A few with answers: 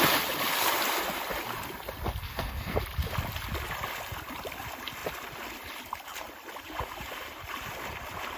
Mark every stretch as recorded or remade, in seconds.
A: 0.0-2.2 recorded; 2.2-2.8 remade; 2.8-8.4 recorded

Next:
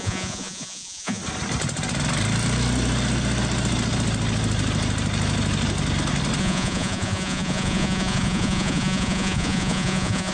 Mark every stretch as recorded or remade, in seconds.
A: 0.0-1.2 remade; 1.2-6.4 recorded; 6.4-10.3 remade

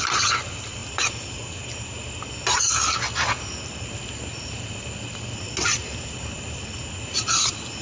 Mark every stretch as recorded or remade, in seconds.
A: 0.0-7.8 recorded

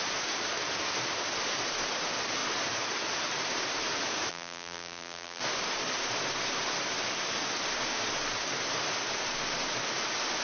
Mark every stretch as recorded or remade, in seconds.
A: 0.0-4.3 recorded; 4.3-5.4 remade; 5.4-10.4 recorded

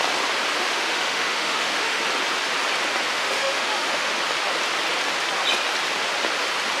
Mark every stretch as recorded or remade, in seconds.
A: 0.0-0.6 recorded; 0.6-2.0 remade; 2.0-3.1 recorded; 3.1-4.1 remade; 4.1-6.8 recorded

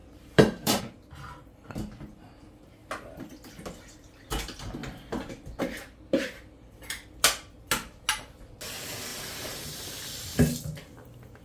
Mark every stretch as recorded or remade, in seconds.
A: 0.0-0.8 remade; 0.8-9.1 recorded; 9.1-9.9 remade; 9.9-11.4 recorded

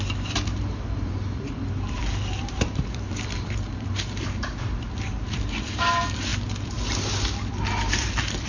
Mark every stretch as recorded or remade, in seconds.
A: 0.0-6.3 remade; 6.3-7.8 recorded; 7.8-8.5 remade